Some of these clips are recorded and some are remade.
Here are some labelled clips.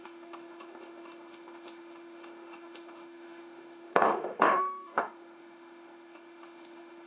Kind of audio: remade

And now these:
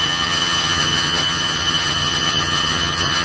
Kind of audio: remade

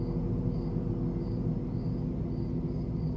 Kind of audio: recorded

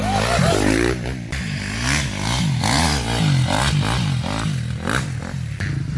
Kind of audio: recorded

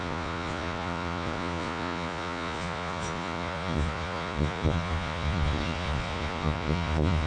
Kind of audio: remade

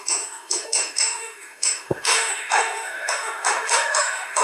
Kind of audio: remade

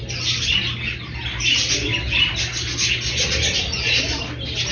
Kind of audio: recorded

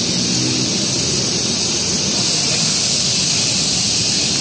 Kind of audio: recorded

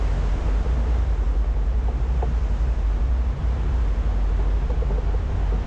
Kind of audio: recorded